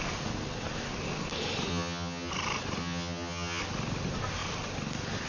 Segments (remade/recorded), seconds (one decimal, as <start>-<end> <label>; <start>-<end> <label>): 0.0-1.7 recorded; 1.7-2.3 remade; 2.3-2.8 recorded; 2.8-3.6 remade; 3.6-5.3 recorded